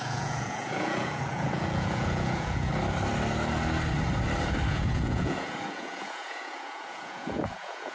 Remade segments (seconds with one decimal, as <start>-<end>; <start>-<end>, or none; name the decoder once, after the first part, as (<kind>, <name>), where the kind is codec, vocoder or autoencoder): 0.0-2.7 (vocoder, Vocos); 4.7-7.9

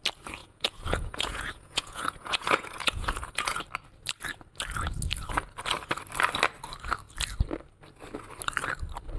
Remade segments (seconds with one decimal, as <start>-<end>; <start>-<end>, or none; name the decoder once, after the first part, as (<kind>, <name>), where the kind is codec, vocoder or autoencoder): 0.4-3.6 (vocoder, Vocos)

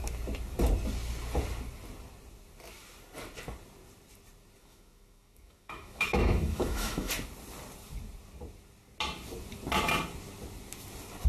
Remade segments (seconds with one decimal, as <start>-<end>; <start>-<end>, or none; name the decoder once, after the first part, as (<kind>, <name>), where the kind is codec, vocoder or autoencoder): 4.6-7.1 (autoencoder, DAC-VAE)